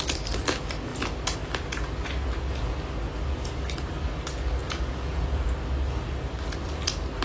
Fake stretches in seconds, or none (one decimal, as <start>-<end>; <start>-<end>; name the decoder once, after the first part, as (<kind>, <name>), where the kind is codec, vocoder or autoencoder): 4.6-5.5 (vocoder, Vocos)